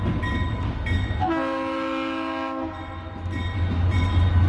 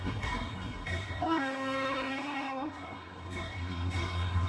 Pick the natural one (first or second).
first